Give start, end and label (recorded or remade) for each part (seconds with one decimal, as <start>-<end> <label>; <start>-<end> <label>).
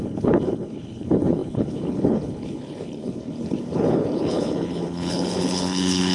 0.0-6.1 remade